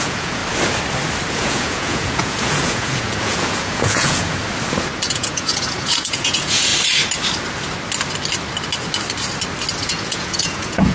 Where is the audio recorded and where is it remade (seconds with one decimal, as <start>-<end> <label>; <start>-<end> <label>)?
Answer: 0.0-0.4 remade; 0.4-1.3 recorded; 1.3-4.4 remade; 4.4-5.1 recorded; 5.1-6.7 remade; 6.7-9.8 recorded; 9.8-10.9 remade